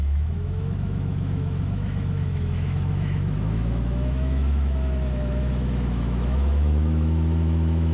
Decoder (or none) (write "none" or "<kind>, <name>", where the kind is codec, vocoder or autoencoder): autoencoder, DAC-VAE